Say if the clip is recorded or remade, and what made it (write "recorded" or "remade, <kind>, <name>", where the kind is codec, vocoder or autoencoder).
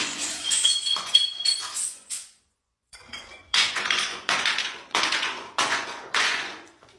remade, vocoder, Vocos